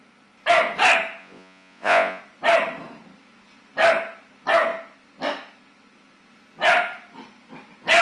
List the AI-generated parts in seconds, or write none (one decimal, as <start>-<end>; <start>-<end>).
1.2-2.2